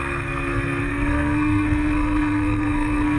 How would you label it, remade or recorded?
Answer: remade